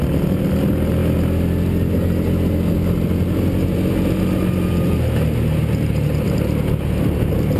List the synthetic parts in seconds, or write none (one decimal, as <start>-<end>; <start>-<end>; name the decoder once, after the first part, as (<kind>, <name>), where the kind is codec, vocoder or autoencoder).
none